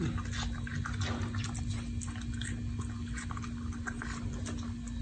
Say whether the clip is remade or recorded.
recorded